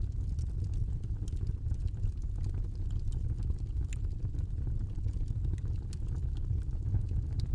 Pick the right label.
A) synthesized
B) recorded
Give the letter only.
B